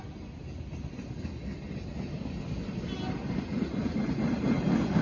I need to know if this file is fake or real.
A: real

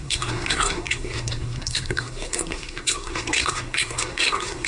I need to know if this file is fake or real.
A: fake